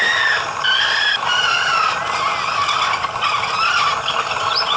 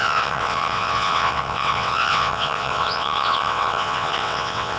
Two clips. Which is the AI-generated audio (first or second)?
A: second